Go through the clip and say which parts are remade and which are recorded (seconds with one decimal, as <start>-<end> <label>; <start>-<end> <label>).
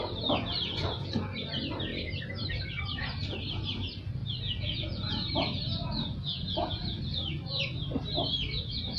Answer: 0.0-4.2 recorded; 4.2-5.1 remade; 5.1-5.8 recorded; 5.8-7.0 remade; 7.0-9.0 recorded